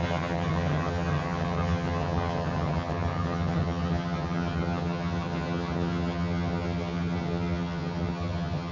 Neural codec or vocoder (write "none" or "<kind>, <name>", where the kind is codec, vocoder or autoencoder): vocoder, HiFi-GAN